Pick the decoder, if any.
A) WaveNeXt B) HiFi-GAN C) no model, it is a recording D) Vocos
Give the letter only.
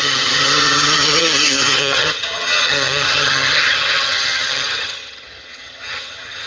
B